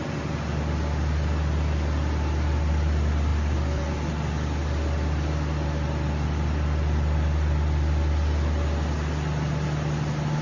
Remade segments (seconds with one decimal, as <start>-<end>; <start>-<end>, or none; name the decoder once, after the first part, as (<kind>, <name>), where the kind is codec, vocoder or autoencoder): none